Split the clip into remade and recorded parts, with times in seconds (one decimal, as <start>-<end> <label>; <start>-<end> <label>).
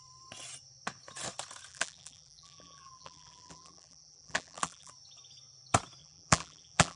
0.0-1.7 recorded; 1.7-4.9 remade; 4.9-6.0 recorded; 6.0-7.0 remade